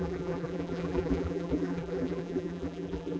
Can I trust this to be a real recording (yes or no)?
no